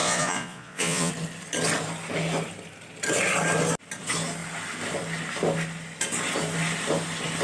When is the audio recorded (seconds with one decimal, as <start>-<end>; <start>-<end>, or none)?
1.1-7.4